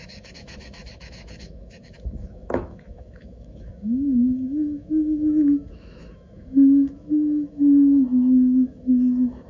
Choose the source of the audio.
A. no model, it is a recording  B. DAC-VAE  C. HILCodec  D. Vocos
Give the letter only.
B